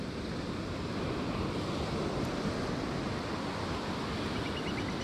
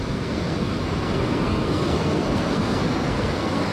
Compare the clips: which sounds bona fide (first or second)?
first